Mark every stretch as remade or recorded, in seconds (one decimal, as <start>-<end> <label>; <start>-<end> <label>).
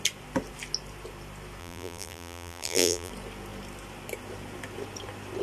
0.0-1.6 recorded; 1.6-3.1 remade; 3.1-5.4 recorded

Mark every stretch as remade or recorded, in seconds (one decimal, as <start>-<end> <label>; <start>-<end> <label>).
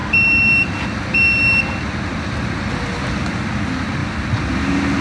0.0-5.0 recorded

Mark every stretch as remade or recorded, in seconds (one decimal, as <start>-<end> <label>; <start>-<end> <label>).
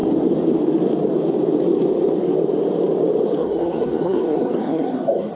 0.0-3.4 recorded; 3.4-5.4 remade